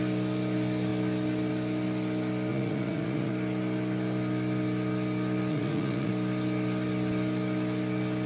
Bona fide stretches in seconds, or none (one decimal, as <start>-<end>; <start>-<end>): 0.0-2.5; 3.3-5.5; 6.1-8.3